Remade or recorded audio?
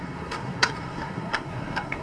remade